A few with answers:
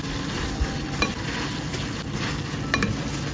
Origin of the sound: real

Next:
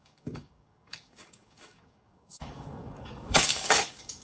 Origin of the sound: fake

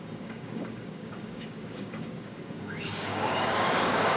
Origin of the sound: fake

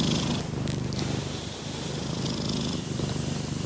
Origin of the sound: real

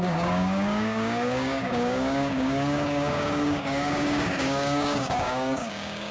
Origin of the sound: fake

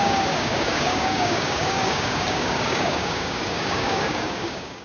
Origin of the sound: fake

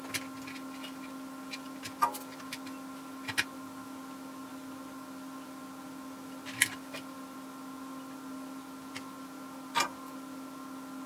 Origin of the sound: real